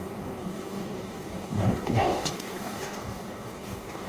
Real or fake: fake